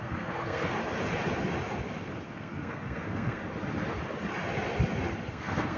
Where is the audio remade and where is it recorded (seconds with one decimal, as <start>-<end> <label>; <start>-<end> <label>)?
0.0-0.8 remade; 0.8-2.0 recorded; 2.0-3.4 remade; 3.4-5.3 recorded; 5.3-5.8 remade